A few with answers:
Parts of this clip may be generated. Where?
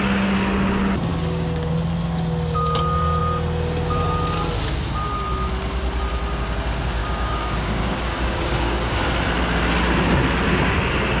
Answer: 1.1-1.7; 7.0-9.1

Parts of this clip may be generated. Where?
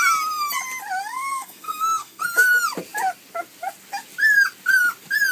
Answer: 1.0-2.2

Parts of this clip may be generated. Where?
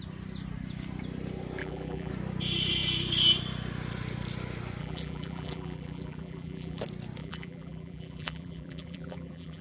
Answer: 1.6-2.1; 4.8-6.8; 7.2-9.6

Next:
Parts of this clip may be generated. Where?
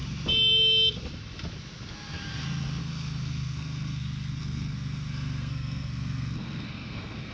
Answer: 2.8-7.3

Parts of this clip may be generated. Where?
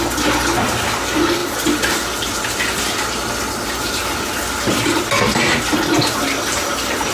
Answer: none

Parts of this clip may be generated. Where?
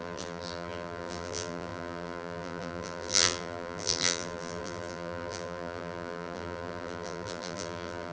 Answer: 0.0-8.1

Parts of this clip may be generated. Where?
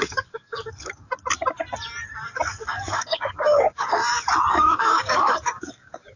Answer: 0.0-1.1; 2.5-4.0; 4.5-6.2